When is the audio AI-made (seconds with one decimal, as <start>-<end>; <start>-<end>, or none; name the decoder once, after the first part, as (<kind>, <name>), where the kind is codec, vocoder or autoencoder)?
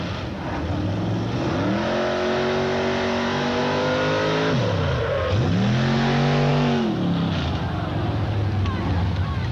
none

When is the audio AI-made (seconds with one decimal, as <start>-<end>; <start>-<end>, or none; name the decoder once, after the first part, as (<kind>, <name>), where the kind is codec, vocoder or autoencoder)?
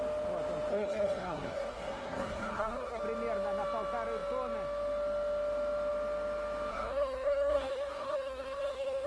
0.7-3.0 (codec, SNAC); 6.7-9.1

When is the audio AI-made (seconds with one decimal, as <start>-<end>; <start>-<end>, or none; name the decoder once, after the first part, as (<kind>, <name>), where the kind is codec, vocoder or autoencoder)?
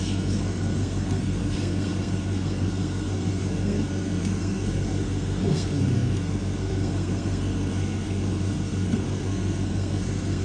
0.0-10.4 (codec, SNAC)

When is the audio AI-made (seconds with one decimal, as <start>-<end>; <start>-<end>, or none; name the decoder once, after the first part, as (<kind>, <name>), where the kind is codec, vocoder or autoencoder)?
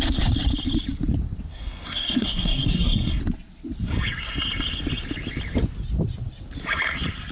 1.5-3.2 (codec, SNAC)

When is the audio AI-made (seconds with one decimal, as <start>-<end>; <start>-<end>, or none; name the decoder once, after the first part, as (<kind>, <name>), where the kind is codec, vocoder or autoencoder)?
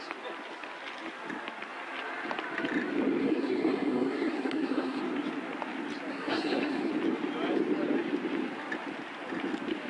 3.2-5.0 (codec, SNAC); 6.1-6.9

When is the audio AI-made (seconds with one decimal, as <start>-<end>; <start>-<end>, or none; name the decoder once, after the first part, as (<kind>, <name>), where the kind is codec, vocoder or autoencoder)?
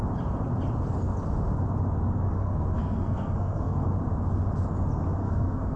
2.4-3.9 (codec, SNAC); 5.2-5.8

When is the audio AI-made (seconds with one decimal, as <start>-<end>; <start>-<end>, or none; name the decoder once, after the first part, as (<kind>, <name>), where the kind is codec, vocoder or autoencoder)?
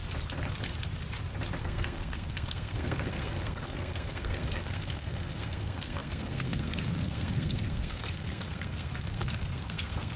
1.6-10.2 (codec, SNAC)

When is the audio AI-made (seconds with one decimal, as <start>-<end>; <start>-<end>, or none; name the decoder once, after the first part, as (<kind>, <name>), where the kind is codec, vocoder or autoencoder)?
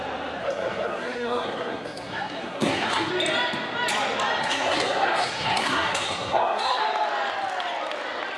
0.4-3.1 (codec, SNAC); 4.4-6.8